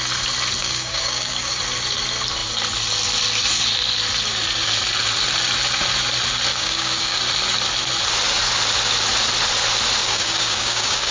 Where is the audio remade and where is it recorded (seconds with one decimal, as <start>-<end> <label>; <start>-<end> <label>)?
0.0-0.6 recorded; 0.6-1.6 remade; 1.6-6.5 recorded; 6.5-7.2 remade; 7.2-10.0 recorded; 10.0-11.1 remade